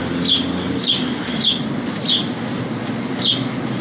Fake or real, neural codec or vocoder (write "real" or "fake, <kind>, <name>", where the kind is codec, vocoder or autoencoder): real